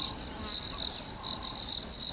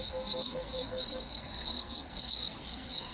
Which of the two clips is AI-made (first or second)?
second